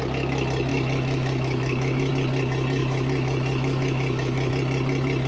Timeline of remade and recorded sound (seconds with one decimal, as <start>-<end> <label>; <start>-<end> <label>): 0.0-0.7 recorded; 0.7-2.1 remade; 2.1-2.8 recorded; 2.8-4.5 remade; 4.5-5.3 recorded